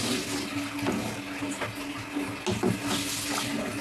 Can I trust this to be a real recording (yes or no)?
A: yes